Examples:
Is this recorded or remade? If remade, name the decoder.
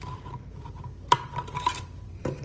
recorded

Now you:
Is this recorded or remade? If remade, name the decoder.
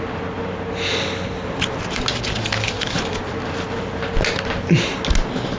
recorded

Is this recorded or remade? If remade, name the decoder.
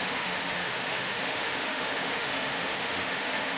remade, autoencoder, DAC-VAE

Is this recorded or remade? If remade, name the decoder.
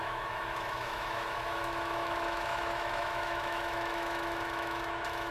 remade, autoencoder, DAC-VAE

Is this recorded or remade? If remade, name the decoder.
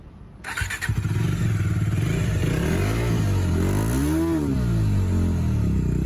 recorded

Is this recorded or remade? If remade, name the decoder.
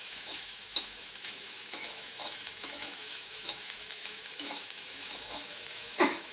remade, autoencoder, DAC-VAE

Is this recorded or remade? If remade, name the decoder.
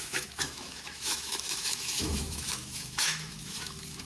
remade, autoencoder, DAC-VAE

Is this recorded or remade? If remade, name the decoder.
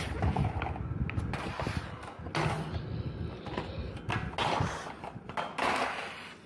recorded